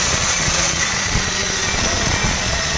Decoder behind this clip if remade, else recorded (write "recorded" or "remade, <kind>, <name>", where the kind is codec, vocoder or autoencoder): remade, vocoder, Vocos